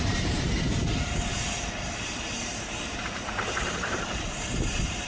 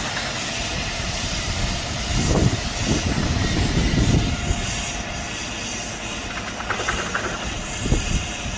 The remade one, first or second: first